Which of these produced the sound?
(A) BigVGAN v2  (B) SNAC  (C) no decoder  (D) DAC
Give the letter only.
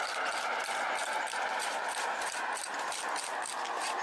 C